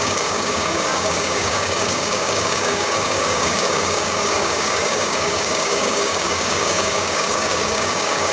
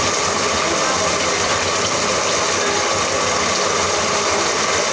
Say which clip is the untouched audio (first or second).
second